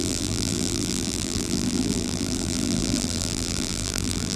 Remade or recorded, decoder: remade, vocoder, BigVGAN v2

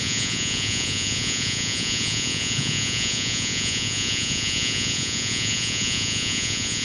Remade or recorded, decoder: remade, vocoder, Vocos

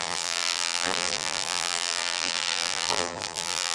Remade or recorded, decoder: remade, vocoder, BigVGAN v2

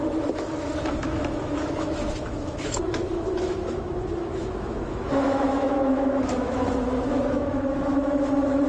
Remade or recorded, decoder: remade, autoencoder, DAC-VAE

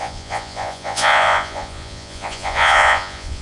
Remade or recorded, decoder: remade, vocoder, Vocos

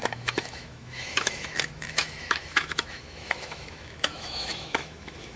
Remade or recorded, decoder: remade, autoencoder, DAC-VAE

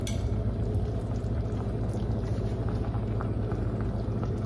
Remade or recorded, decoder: recorded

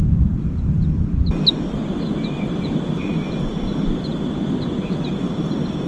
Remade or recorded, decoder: recorded